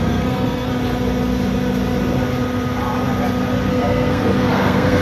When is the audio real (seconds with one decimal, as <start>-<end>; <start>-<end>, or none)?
0.7-3.7